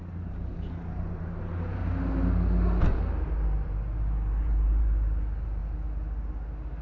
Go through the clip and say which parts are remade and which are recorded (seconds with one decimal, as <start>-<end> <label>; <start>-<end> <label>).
0.0-1.8 remade; 1.8-3.0 recorded; 3.0-5.6 remade; 5.6-6.8 recorded